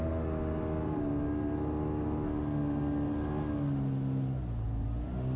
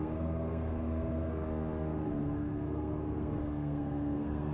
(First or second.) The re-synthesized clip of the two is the second